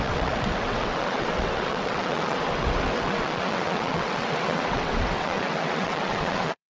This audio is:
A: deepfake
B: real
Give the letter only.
A